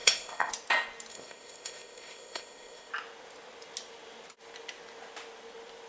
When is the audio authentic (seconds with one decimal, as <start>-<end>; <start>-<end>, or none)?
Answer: 0.5-1.1; 2.9-5.9